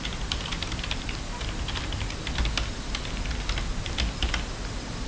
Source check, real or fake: real